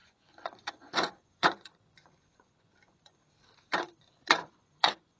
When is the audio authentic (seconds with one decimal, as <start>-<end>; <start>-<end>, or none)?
3.2-3.8

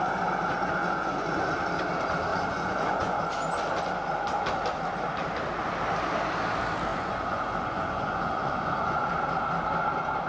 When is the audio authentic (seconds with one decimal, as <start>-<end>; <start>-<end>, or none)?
0.0-0.8; 1.5-2.3; 3.2-6.9; 9.1-10.3

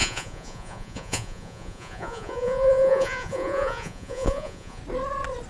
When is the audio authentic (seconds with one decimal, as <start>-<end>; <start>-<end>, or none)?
4.8-5.5

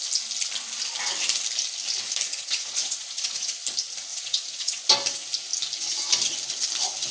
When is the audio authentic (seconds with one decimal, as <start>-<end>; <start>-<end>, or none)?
0.0-2.4; 3.6-4.1; 4.8-7.1

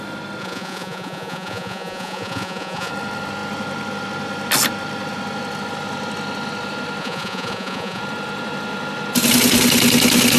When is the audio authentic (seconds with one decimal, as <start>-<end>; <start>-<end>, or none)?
0.0-0.4; 2.9-7.0; 8.0-10.4

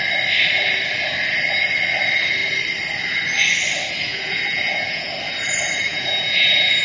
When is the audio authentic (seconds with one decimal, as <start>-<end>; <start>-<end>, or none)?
0.0-4.1; 5.1-5.9

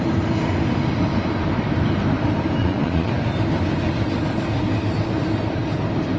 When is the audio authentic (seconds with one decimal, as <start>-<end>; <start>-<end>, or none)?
0.0-2.6; 3.1-6.2